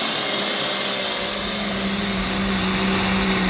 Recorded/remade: recorded